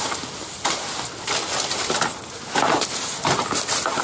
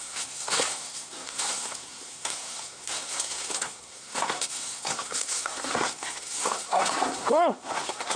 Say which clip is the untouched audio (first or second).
first